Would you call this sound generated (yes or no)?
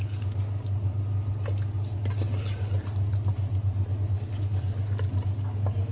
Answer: no